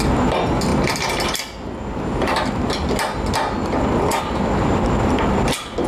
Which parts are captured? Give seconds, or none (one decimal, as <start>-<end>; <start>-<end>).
0.0-5.9